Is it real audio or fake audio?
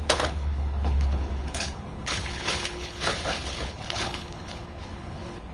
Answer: fake